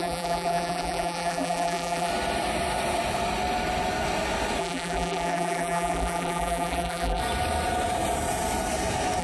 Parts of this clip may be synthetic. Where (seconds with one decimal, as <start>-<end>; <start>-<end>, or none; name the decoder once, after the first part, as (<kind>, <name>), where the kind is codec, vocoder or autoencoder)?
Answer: 0.0-2.1 (vocoder, BigVGAN v2); 4.6-7.2